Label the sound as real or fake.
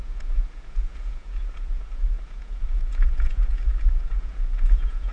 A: fake